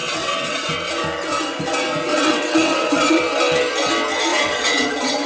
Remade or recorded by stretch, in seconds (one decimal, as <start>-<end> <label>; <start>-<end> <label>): 0.0-0.9 remade; 0.9-2.1 recorded; 2.1-3.2 remade; 3.2-4.3 recorded; 4.3-5.3 remade